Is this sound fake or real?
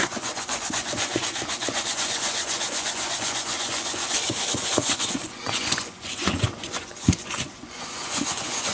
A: fake